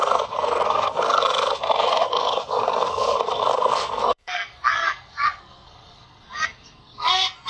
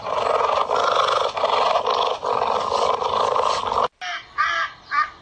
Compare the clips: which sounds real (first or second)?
second